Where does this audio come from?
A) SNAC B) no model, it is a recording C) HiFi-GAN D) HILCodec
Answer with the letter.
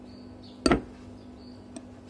B